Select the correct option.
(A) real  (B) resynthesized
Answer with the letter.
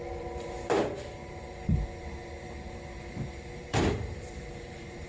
B